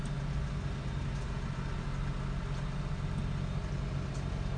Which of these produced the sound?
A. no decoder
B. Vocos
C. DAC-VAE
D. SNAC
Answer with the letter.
A